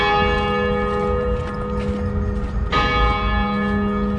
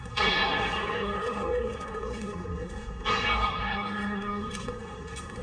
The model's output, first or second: second